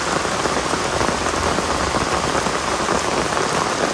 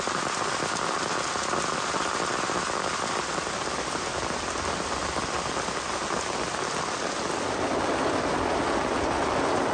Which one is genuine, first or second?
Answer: second